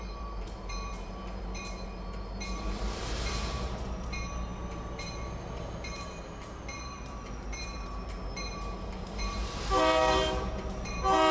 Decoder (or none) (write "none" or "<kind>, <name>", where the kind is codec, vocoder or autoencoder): vocoder, BigVGAN v2